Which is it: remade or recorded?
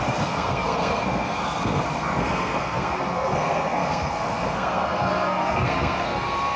remade